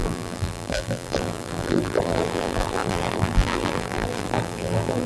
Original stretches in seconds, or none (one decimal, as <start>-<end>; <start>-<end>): none